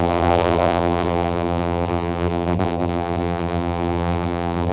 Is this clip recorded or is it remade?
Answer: remade